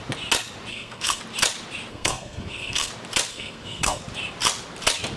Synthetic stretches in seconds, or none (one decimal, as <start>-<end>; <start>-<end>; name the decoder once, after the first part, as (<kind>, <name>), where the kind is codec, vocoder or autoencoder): 0.7-1.2 (codec, SNAC); 1.9-2.9; 3.3-4.0